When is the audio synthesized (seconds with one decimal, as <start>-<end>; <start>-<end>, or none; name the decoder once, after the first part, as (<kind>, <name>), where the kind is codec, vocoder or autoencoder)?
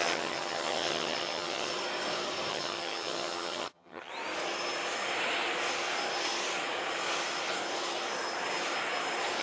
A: 0.0-1.7 (vocoder, HiFi-GAN); 2.5-4.1